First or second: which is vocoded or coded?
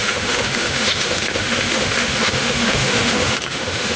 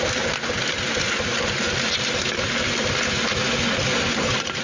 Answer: first